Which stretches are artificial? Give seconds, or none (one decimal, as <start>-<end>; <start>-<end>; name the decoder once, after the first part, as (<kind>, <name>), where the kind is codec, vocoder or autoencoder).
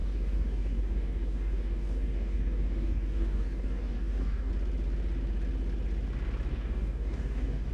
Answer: 0.0-4.5 (codec, DAC); 6.5-7.7